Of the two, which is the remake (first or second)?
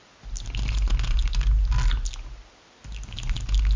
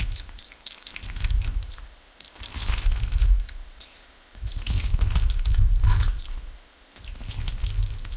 second